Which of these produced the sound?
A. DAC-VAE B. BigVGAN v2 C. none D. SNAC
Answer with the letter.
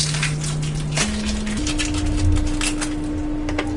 C